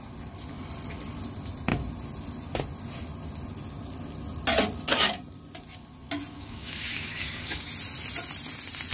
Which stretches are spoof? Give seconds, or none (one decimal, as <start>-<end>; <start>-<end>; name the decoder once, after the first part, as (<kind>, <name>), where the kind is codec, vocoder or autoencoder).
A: 6.3-7.7 (codec, DAC)